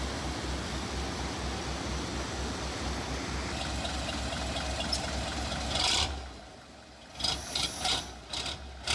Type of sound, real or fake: real